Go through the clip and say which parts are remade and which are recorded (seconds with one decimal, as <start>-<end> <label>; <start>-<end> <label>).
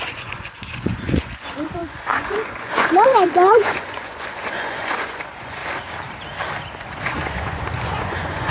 0.0-5.6 remade; 5.6-6.8 recorded; 6.8-8.5 remade